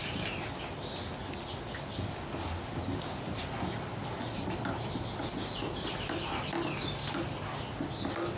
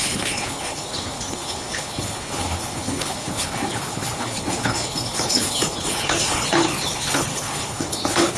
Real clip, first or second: first